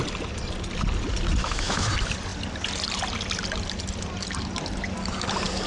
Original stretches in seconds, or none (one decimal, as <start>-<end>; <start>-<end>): 0.0-1.4; 1.9-5.7